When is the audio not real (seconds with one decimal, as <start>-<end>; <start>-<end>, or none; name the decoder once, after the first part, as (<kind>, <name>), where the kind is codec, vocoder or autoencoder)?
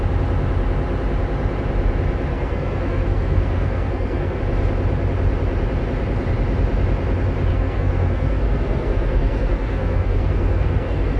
2.3-4.4 (codec, SNAC); 7.5-11.2